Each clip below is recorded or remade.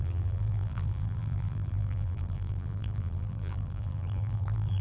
remade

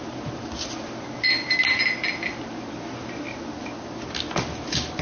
recorded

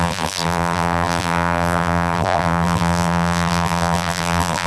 remade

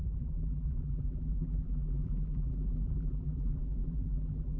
remade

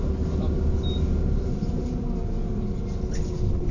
recorded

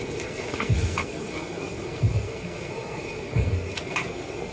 remade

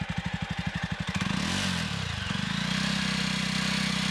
recorded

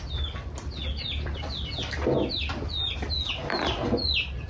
recorded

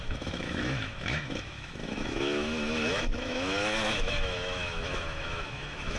remade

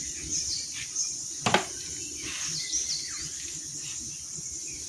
recorded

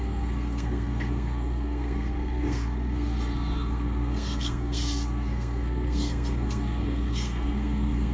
remade